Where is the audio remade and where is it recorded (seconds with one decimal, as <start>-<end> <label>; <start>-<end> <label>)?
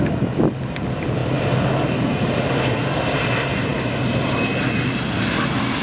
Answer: 0.0-5.8 recorded